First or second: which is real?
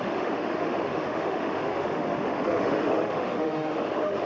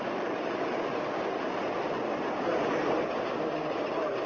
second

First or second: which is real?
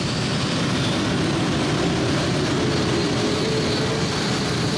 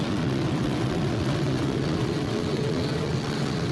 first